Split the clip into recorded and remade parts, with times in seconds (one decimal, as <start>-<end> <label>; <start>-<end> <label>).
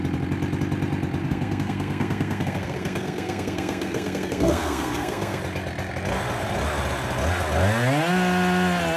0.0-1.2 recorded; 1.2-5.4 remade; 5.4-9.0 recorded